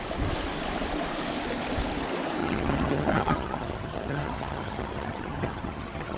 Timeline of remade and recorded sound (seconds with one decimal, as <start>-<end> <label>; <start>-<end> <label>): 0.0-2.4 recorded; 2.4-6.2 remade